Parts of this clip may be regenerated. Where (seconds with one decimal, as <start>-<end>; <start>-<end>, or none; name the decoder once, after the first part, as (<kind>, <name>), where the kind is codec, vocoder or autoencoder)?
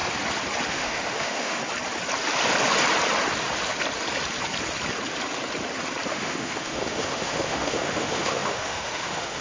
0.7-1.6 (autoencoder, DAC-VAE); 6.1-9.4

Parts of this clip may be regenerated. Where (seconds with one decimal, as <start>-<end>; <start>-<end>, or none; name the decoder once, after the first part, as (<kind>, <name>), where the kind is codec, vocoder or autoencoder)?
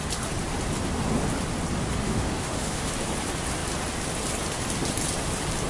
2.0-2.9 (autoencoder, DAC-VAE)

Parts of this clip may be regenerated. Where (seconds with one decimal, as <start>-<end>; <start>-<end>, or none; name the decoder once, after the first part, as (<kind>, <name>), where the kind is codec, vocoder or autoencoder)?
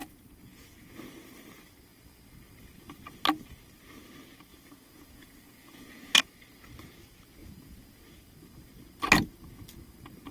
0.0-0.9 (vocoder, Vocos); 4.5-6.3; 7.4-8.0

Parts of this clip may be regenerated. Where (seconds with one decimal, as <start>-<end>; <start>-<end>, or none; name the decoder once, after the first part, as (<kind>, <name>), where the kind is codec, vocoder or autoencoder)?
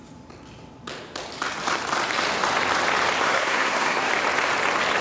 3.2-4.1 (codec, SNAC)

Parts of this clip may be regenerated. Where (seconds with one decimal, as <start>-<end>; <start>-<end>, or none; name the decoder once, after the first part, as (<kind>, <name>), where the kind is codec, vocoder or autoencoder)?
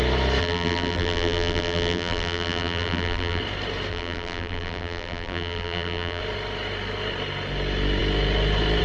0.4-3.4 (vocoder, BigVGAN v2); 3.9-6.2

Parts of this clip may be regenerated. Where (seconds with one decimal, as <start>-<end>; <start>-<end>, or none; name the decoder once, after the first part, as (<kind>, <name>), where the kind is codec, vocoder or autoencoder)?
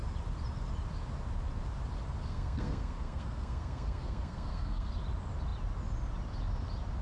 2.3-4.9 (codec, SNAC)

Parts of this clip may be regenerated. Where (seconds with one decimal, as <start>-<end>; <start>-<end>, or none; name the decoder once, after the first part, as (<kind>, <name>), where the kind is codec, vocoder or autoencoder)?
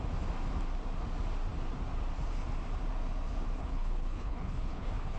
3.6-5.2 (codec, HILCodec)